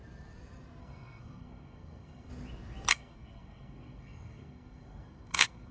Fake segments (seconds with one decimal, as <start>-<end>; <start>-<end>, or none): 0.8-2.3; 2.9-5.7